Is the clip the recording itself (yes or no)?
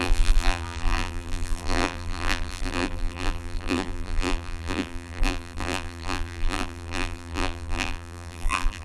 no